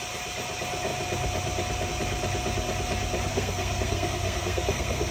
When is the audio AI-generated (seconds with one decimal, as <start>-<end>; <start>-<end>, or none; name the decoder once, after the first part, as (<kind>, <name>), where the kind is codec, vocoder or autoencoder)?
3.3-5.1 (codec, SNAC)